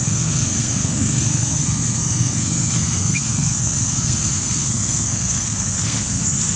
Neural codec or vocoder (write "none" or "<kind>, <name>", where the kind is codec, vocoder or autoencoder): codec, SNAC